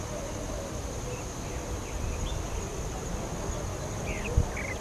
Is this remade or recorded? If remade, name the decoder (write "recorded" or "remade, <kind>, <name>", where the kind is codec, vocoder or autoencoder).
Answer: recorded